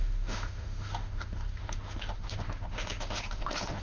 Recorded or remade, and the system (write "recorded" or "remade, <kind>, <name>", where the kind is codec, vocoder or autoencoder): remade, autoencoder, DAC-VAE